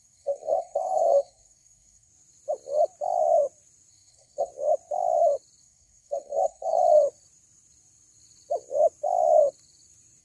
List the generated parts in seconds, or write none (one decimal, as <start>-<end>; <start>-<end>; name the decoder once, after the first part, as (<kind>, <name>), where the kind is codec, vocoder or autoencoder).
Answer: 0.0-2.1 (codec, SNAC); 3.9-4.5; 5.6-6.8